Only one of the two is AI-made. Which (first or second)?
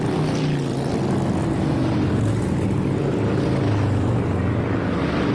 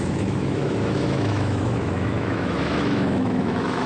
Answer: second